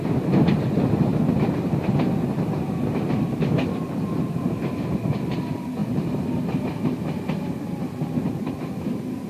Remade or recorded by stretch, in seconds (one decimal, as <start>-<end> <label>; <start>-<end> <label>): 0.0-1.1 remade; 1.1-4.7 recorded; 4.7-9.3 remade